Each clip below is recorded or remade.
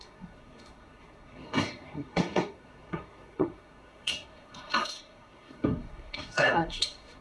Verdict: remade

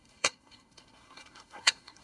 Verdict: remade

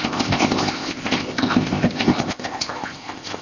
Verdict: remade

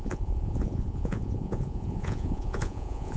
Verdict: remade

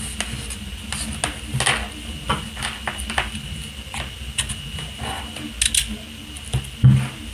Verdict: recorded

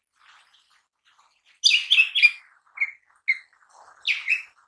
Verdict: recorded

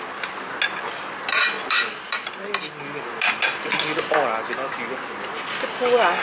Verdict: recorded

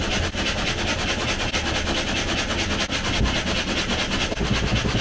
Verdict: recorded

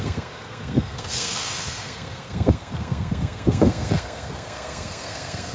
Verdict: remade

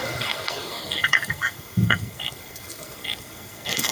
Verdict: remade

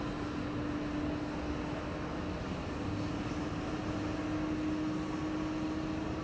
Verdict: recorded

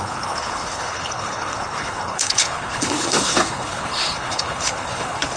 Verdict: remade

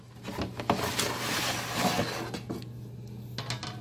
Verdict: recorded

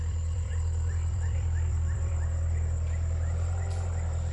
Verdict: remade